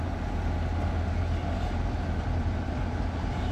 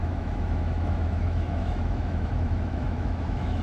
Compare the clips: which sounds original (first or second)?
first